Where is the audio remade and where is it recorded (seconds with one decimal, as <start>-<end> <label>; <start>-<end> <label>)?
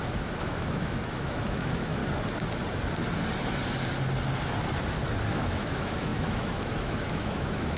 0.0-2.0 remade; 2.0-5.3 recorded; 5.3-7.8 remade